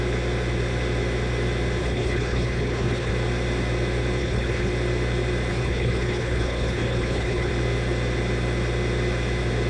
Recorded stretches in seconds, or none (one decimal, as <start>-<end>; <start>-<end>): 0.0-1.8; 3.1-4.2; 4.7-5.5; 7.5-9.7